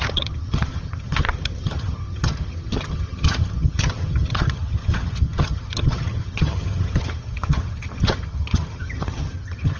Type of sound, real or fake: fake